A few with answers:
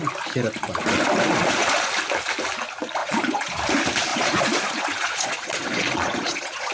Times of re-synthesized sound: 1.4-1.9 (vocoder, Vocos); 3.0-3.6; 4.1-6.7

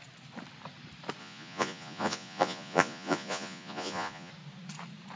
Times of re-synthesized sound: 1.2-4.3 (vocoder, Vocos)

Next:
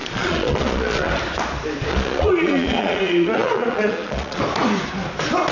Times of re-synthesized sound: 0.0-1.1 (vocoder, Vocos); 1.9-4.4